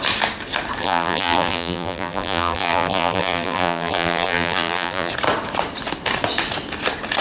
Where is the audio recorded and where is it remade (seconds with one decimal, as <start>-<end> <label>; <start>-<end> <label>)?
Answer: 0.0-0.8 recorded; 0.8-5.1 remade; 5.1-7.2 recorded